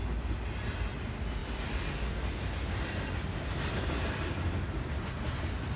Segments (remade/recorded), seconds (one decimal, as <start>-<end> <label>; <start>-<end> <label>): 0.0-5.8 recorded